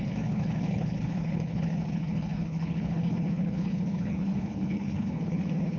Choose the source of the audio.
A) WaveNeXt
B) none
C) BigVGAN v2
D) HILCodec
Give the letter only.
D